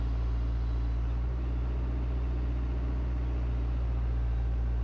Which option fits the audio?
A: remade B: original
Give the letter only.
B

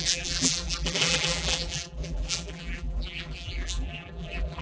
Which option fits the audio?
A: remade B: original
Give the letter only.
A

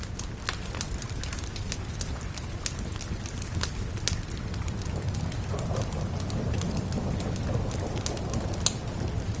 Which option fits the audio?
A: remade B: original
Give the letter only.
B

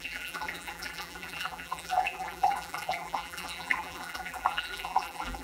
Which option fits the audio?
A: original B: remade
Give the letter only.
B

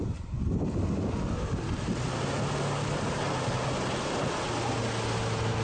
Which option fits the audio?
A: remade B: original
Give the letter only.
B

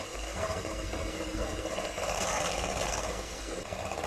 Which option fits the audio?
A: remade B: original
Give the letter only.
A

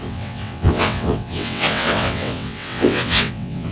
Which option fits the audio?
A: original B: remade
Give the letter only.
B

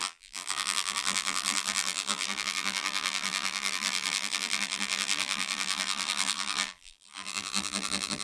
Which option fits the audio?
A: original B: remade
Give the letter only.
B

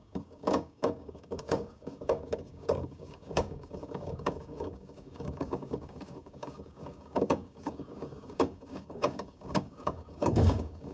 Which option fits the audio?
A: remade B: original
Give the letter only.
A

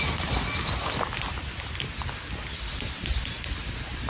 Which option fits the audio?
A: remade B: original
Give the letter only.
B